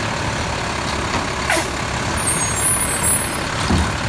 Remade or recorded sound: recorded